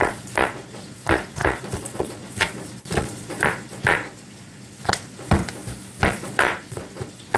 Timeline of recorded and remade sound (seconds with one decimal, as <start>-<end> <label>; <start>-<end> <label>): 0.0-5.4 remade; 5.4-6.0 recorded; 6.0-7.4 remade